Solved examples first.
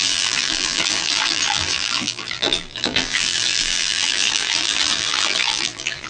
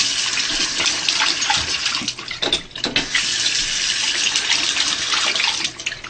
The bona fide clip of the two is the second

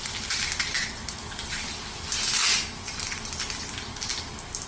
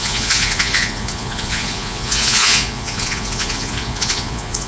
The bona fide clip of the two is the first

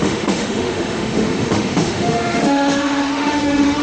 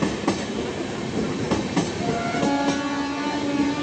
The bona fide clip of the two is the second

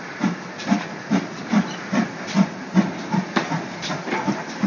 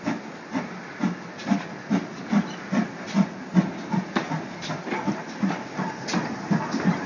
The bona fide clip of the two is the second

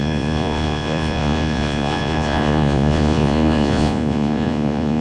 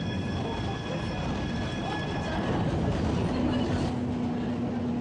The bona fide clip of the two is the second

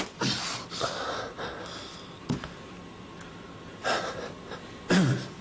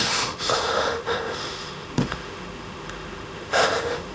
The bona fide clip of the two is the first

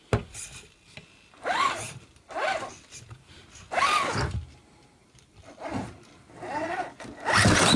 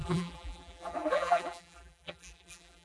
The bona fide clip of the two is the first